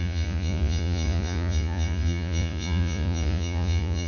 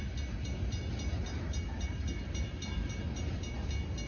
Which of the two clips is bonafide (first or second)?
second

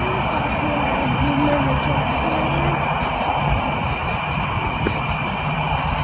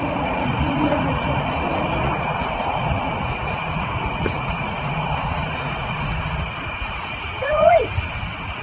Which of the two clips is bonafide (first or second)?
first